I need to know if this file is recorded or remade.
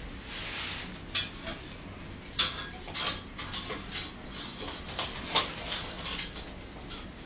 recorded